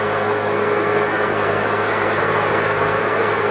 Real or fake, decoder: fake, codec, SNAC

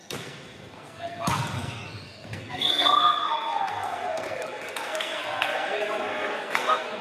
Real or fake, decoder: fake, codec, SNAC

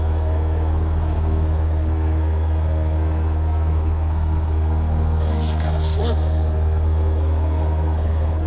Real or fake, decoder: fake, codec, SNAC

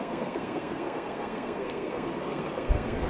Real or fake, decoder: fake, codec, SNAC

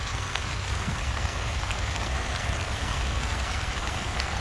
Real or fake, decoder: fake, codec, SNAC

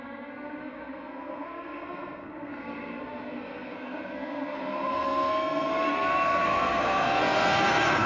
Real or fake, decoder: fake, codec, SNAC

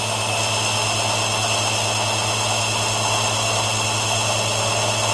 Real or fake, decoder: real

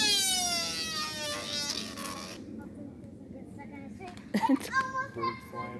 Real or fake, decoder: real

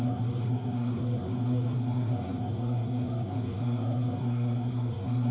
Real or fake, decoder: fake, codec, SNAC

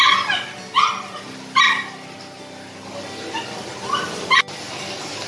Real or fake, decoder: real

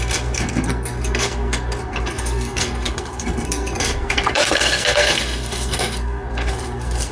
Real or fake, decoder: fake, codec, SNAC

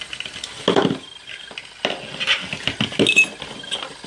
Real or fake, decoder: real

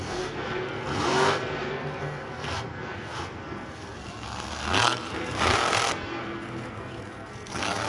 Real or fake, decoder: fake, codec, SNAC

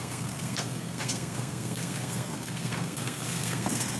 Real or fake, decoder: fake, codec, SNAC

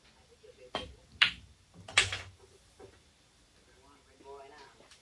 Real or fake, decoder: real